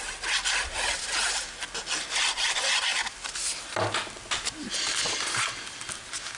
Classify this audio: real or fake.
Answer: real